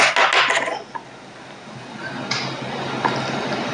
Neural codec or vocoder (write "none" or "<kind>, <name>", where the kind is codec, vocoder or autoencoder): none